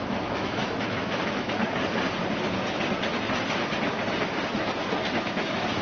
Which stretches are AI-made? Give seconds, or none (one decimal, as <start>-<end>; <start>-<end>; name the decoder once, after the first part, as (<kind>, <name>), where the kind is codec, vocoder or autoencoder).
0.0-1.6 (autoencoder, DAC-VAE); 5.1-5.8